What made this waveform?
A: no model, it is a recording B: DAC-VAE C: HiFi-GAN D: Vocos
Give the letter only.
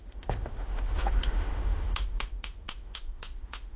B